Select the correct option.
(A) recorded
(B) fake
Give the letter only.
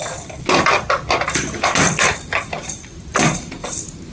A